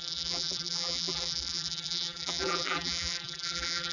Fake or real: fake